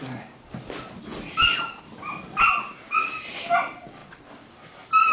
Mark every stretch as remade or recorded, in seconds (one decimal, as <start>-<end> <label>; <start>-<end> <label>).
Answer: 0.0-5.1 recorded